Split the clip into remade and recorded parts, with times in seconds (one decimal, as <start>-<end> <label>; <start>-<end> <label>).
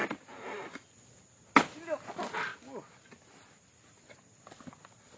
0.0-0.7 remade; 0.7-5.2 recorded